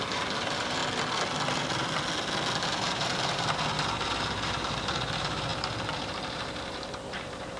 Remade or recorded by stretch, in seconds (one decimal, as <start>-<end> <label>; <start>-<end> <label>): 0.0-0.8 remade; 0.8-2.6 recorded; 2.6-7.6 remade